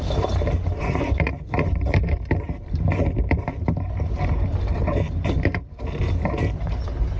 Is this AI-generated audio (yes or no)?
yes